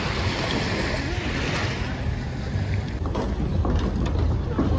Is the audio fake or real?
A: real